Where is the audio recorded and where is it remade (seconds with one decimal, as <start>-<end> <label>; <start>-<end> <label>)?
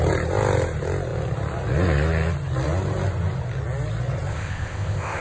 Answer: 0.0-4.3 recorded; 4.3-5.2 remade